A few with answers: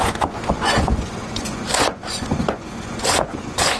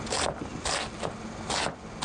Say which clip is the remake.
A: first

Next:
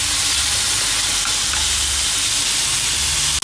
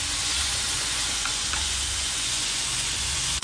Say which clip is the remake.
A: second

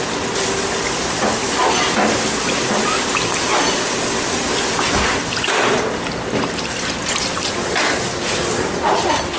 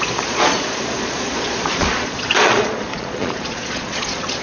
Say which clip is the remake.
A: second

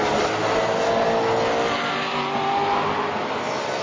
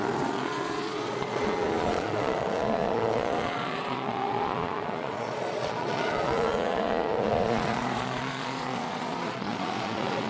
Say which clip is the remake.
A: second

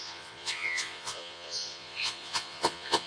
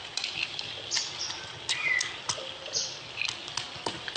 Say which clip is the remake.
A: first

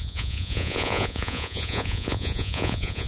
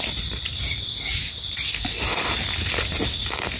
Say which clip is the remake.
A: first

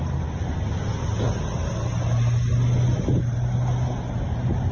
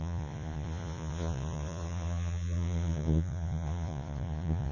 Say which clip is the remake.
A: second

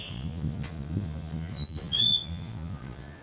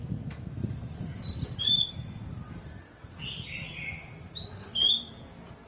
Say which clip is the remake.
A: first